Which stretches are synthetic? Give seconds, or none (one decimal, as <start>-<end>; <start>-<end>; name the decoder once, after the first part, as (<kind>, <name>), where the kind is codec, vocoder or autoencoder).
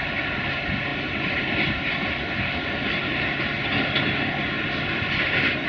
none